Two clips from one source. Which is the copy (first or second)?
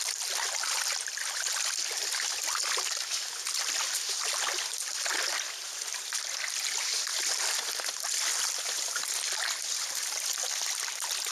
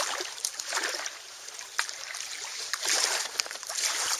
second